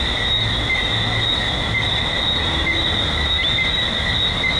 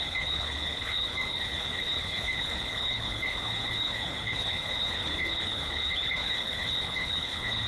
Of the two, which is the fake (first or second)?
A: second